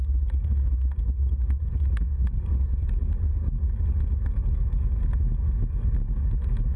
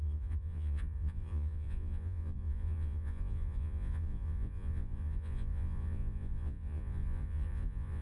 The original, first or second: first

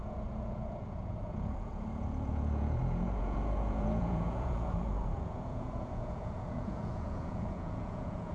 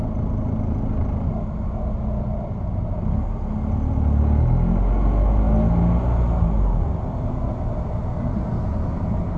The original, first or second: second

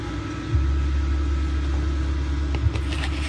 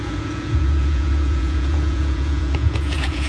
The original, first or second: first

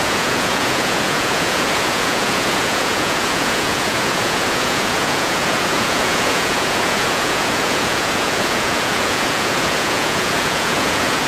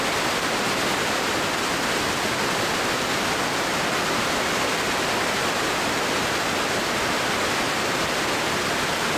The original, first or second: second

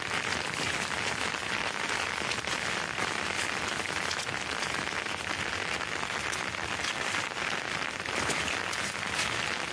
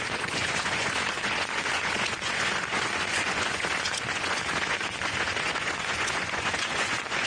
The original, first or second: first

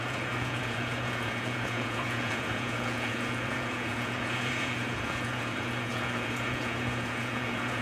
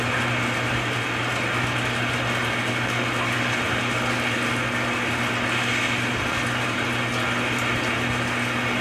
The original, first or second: second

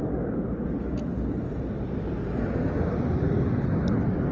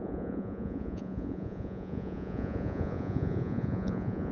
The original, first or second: first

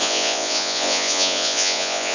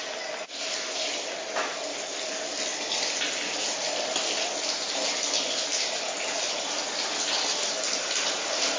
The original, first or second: second